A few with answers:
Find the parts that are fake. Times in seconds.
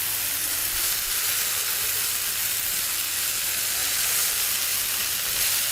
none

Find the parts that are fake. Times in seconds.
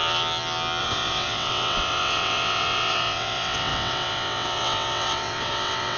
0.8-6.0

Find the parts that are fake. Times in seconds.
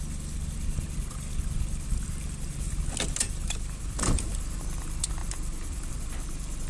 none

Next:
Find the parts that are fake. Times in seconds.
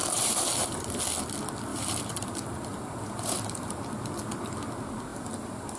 0.0-1.0; 1.7-3.8; 5.1-5.8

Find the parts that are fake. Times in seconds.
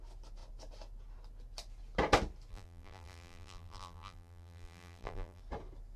2.5-5.4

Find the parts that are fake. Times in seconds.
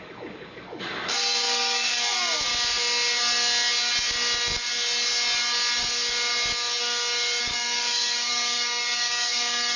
0.0-2.5; 7.4-9.8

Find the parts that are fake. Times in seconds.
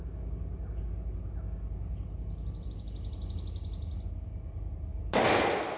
none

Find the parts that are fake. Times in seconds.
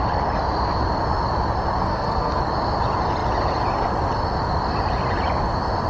1.8-2.4